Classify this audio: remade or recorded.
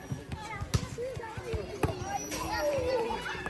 recorded